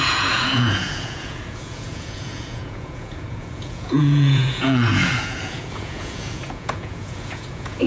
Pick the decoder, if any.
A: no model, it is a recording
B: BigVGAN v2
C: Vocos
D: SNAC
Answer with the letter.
C